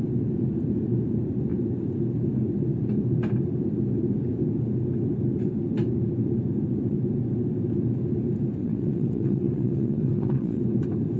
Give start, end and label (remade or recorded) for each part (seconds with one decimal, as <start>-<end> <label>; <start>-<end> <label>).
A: 0.0-8.6 recorded; 8.6-10.6 remade; 10.6-11.2 recorded